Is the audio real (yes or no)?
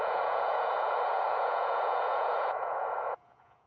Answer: no